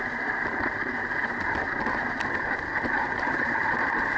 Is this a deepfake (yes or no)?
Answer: no